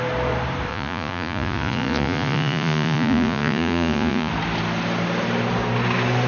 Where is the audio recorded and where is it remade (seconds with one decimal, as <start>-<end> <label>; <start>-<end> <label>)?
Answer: 0.0-0.7 recorded; 0.7-4.3 remade; 4.3-6.3 recorded